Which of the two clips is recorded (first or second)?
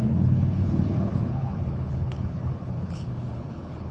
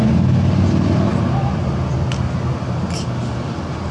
second